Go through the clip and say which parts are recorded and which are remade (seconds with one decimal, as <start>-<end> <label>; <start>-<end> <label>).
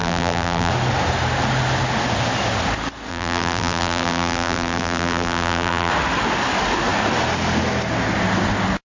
0.0-0.7 remade; 0.7-3.1 recorded; 3.1-5.9 remade; 5.9-8.8 recorded